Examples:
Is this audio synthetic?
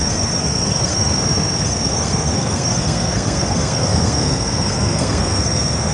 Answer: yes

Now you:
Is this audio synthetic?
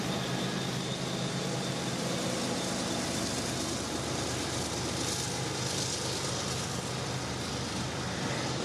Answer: no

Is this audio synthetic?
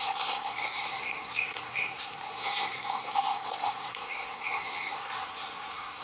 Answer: yes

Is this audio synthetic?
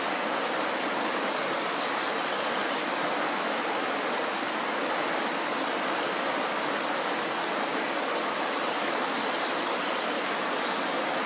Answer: no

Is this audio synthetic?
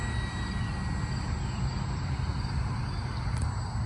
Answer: no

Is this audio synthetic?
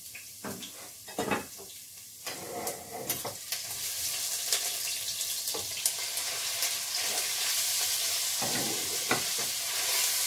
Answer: no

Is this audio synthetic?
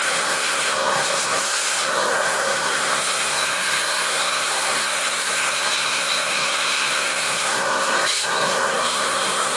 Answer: yes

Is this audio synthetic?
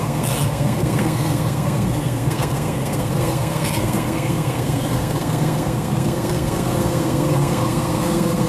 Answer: yes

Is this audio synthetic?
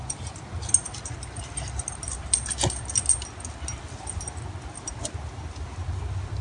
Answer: no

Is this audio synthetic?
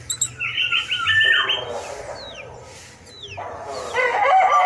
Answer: no